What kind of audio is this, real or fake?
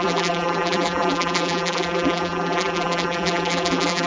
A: fake